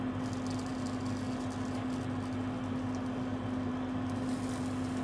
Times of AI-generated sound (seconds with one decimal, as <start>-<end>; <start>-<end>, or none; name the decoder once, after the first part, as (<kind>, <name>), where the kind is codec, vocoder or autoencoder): none